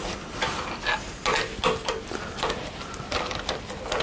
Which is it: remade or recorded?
recorded